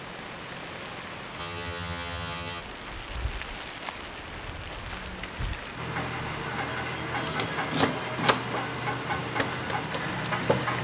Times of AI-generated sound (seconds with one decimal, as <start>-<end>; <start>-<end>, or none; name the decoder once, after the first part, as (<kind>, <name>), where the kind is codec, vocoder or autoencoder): 1.4-2.6 (vocoder, HiFi-GAN)

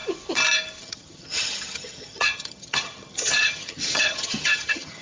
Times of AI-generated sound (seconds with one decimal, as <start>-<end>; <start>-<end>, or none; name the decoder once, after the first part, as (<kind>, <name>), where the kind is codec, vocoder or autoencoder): 0.8-5.0 (vocoder, HiFi-GAN)

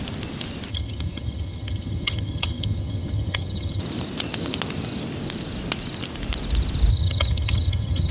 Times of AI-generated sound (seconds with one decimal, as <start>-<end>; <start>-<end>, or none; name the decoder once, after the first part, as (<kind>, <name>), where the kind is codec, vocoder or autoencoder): 0.7-3.8 (vocoder, HiFi-GAN); 6.9-8.1

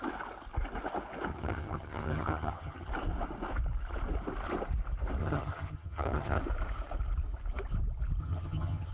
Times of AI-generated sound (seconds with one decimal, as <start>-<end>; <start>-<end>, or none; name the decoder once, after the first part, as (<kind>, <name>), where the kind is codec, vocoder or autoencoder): 1.3-2.9 (vocoder, HiFi-GAN); 5.2-6.4; 8.2-8.9

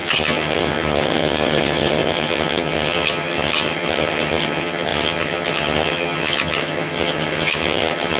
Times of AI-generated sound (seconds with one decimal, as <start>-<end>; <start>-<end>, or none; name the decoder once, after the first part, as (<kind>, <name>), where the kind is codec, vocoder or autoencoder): 0.0-8.2 (vocoder, HiFi-GAN)

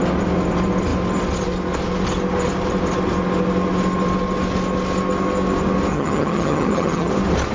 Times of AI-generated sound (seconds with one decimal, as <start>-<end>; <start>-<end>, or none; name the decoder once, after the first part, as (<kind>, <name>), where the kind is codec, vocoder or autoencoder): 5.9-7.1 (vocoder, HiFi-GAN)

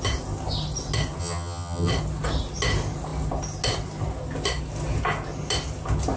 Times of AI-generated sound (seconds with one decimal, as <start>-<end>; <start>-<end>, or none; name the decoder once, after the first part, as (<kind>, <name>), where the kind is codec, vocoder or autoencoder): 1.2-1.9 (vocoder, HiFi-GAN)